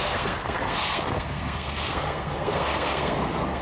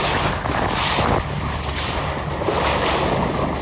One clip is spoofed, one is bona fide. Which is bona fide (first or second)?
second